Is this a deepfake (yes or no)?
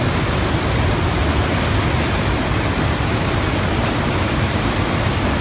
no